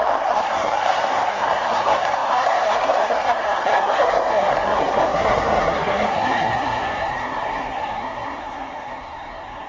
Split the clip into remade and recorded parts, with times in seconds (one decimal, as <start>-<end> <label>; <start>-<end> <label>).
0.0-9.7 remade